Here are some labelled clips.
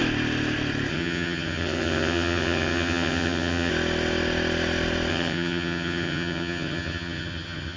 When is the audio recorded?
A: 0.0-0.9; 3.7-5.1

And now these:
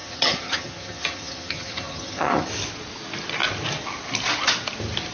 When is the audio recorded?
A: 2.5-5.1

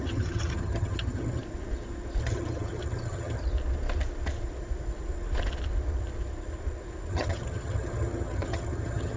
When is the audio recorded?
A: 1.4-2.2; 3.4-7.1

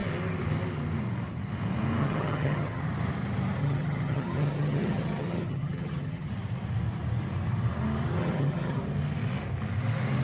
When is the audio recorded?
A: 0.0-2.0; 2.8-3.6; 6.3-8.2; 8.8-10.2

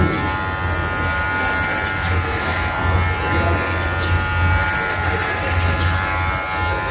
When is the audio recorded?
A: 0.0-6.9